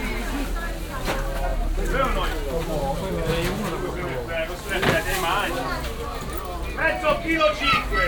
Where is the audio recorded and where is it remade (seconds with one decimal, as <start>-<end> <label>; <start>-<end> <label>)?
0.0-8.1 recorded